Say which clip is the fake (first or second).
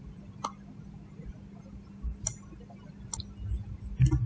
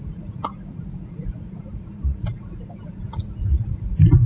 second